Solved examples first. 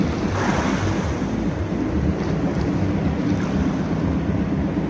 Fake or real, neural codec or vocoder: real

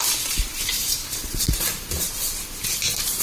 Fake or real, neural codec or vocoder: fake, vocoder, BigVGAN v2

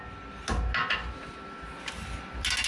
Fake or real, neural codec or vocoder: real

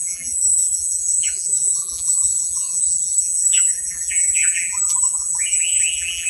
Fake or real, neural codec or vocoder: fake, vocoder, BigVGAN v2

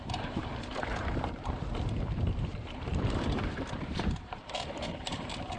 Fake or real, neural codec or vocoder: fake, vocoder, BigVGAN v2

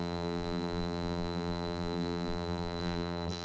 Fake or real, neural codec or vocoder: fake, vocoder, BigVGAN v2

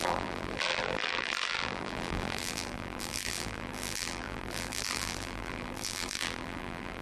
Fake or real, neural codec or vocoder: fake, vocoder, BigVGAN v2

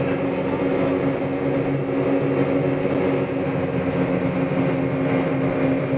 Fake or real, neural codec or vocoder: real